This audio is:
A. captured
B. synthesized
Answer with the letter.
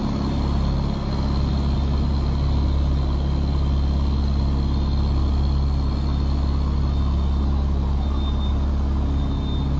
A